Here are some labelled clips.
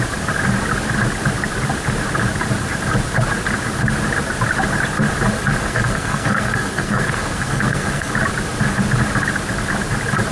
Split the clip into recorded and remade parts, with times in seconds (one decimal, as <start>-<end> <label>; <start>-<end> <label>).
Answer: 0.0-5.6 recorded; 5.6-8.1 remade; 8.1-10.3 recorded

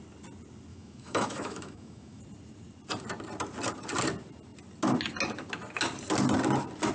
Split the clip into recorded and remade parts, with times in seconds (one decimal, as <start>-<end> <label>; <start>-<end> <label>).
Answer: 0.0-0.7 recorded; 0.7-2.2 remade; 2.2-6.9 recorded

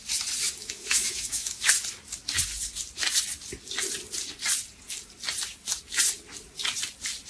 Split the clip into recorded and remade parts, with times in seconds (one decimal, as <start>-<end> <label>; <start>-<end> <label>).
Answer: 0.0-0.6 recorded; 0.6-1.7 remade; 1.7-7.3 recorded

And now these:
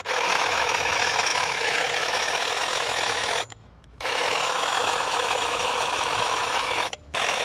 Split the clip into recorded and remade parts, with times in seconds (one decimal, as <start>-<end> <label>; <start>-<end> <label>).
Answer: 0.0-7.4 remade

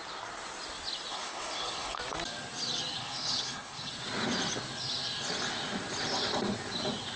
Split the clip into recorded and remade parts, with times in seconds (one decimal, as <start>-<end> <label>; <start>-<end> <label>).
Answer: 0.0-1.1 recorded; 1.1-2.0 remade; 2.0-3.0 recorded; 3.0-3.9 remade; 3.9-7.2 recorded

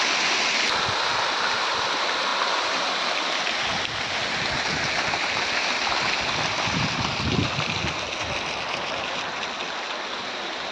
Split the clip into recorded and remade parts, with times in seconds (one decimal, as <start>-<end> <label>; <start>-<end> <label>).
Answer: 0.0-10.7 recorded

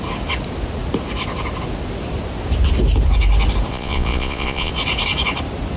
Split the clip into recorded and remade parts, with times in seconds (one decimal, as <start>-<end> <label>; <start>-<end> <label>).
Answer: 0.0-3.7 recorded; 3.7-4.7 remade; 4.7-5.8 recorded

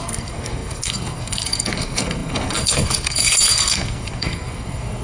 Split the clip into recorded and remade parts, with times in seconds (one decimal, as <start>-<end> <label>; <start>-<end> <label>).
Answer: 0.0-5.0 remade